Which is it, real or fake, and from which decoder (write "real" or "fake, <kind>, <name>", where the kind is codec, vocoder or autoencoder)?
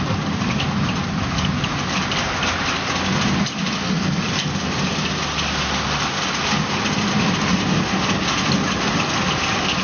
real